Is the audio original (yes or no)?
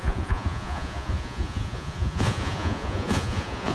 no